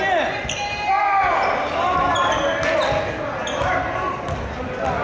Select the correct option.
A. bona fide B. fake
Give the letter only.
A